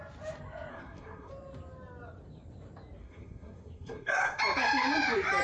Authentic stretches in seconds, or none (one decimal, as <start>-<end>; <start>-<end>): 0.0-0.7; 1.3-3.0; 4.4-5.4